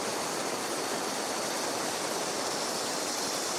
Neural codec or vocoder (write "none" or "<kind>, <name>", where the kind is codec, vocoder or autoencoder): none